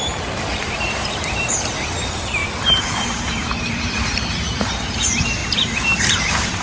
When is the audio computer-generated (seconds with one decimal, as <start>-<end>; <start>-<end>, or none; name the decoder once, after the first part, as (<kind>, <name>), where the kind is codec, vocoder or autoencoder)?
0.0-2.4 (vocoder, BigVGAN v2); 3.1-5.4; 6.0-6.6